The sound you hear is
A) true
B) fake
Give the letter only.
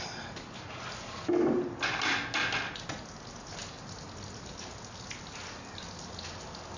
A